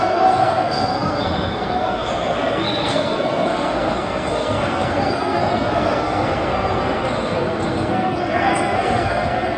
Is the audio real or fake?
fake